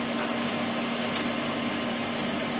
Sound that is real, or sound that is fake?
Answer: real